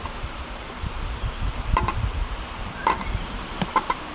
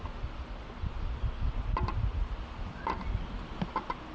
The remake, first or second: first